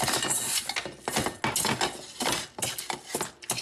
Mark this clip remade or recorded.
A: recorded